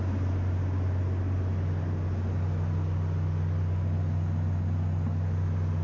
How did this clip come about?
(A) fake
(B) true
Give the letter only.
B